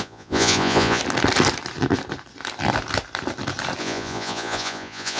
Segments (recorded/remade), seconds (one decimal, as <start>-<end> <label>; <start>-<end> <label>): 0.0-1.0 remade; 1.0-3.8 recorded; 3.8-5.2 remade